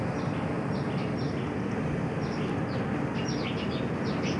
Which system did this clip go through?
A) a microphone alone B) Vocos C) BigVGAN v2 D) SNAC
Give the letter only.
A